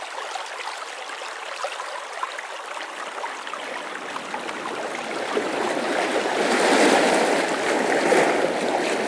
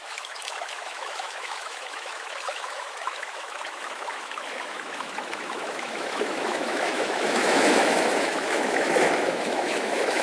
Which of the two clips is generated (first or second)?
second